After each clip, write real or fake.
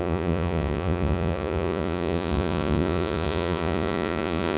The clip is fake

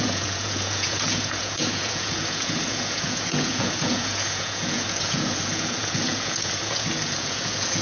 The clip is fake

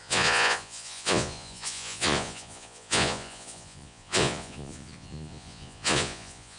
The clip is fake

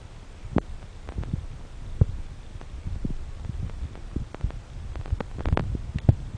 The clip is real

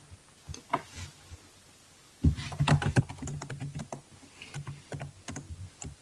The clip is real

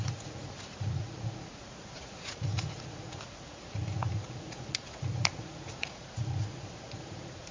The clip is fake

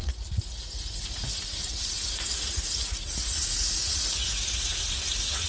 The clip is fake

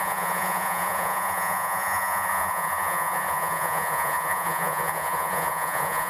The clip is fake